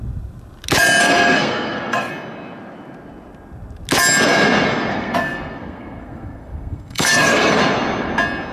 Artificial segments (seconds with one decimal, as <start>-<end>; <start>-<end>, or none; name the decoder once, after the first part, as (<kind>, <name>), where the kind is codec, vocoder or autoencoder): 1.0-2.1 (codec, SNAC); 4.9-7.6